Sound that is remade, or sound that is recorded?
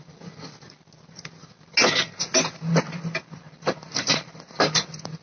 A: recorded